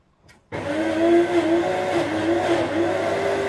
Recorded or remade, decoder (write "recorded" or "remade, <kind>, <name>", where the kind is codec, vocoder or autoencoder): recorded